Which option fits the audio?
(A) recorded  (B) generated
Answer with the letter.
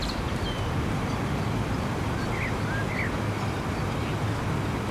A